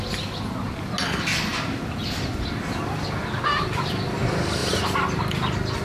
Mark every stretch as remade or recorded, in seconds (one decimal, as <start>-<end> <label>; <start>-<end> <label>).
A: 0.0-4.6 recorded; 4.6-5.2 remade; 5.2-5.8 recorded